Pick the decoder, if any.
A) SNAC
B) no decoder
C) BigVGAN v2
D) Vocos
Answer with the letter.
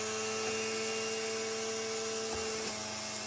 B